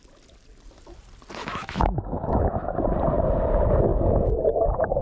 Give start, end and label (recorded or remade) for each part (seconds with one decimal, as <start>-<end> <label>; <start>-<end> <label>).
0.0-1.4 recorded; 1.4-2.7 remade; 2.7-3.9 recorded; 3.9-5.0 remade